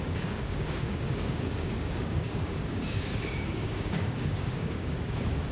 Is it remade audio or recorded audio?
remade